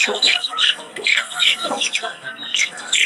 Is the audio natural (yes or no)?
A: no